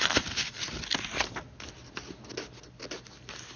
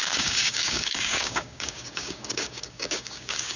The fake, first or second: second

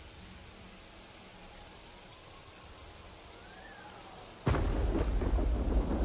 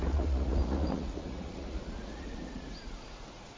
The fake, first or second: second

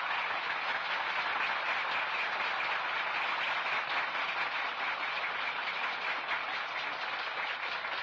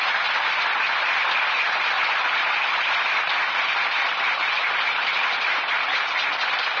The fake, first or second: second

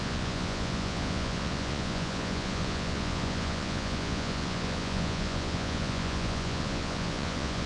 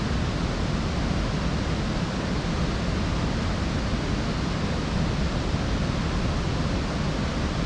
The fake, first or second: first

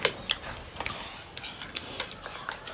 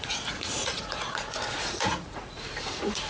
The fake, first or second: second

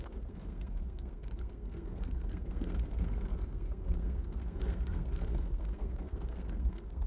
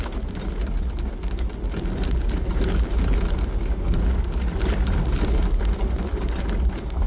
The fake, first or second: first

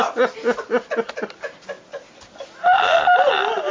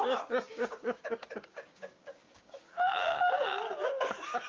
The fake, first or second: second